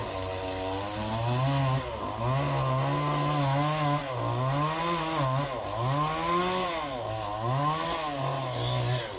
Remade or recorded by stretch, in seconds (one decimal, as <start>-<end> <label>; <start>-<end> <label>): 0.0-9.2 recorded